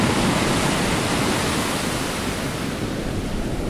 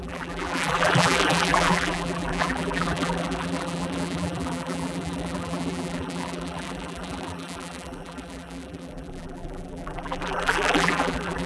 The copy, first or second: second